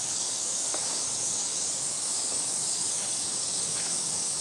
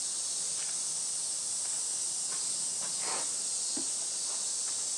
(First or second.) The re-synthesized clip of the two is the first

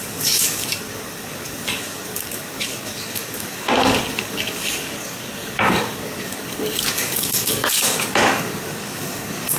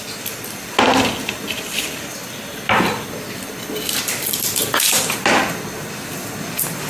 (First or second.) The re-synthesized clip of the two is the first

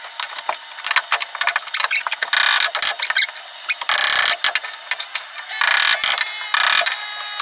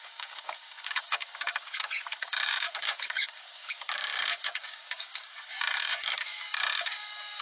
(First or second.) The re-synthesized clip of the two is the second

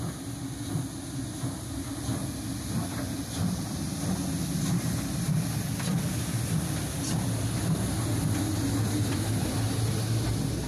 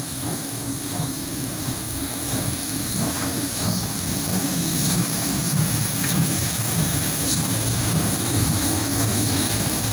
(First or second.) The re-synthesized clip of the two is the second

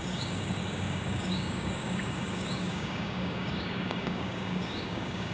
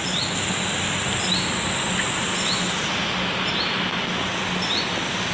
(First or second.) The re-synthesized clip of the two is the first